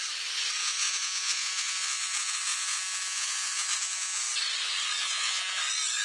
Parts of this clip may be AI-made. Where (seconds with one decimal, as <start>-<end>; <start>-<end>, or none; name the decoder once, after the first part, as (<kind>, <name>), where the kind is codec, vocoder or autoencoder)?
0.6-4.2 (vocoder, Vocos); 5.0-5.6